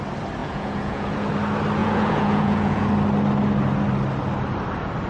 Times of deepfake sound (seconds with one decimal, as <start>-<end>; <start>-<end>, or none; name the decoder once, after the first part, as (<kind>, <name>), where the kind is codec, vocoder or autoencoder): 0.4-1.3 (vocoder, Vocos); 1.8-2.9